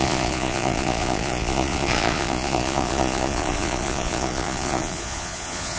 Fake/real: fake